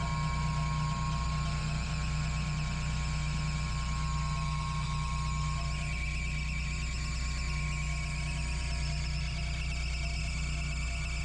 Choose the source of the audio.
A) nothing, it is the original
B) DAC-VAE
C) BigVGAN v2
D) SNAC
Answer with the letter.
A